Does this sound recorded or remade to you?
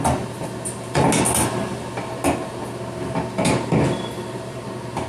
recorded